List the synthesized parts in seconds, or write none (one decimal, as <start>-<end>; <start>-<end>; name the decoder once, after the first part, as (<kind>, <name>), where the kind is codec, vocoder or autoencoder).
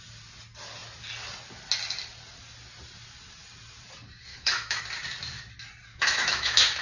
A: 4.3-4.8 (autoencoder, DAC-VAE); 5.9-6.8